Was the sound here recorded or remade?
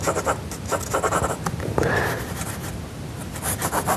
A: recorded